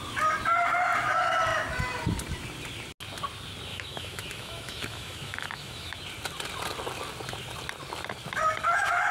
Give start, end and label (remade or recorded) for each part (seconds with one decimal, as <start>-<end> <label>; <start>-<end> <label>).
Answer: 0.0-3.7 recorded; 3.7-6.0 remade; 6.0-9.1 recorded